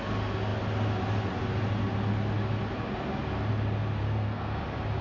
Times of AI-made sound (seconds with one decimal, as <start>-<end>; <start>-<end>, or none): 4.0-4.6